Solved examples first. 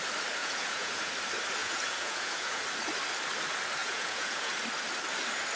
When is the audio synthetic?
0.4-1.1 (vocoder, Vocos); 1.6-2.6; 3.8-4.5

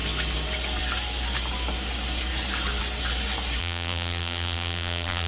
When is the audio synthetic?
3.6-5.3 (vocoder, BigVGAN v2)